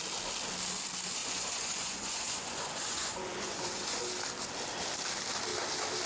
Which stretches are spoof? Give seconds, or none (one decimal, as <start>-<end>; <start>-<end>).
1.2-4.0